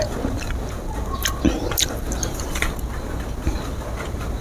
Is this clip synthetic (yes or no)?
no